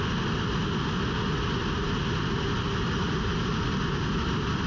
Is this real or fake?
real